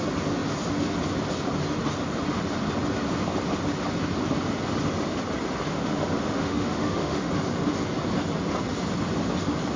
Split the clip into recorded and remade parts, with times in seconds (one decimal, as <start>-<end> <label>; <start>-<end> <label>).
0.0-5.7 recorded; 5.7-7.3 remade; 7.3-9.8 recorded